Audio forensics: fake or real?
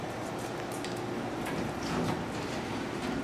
real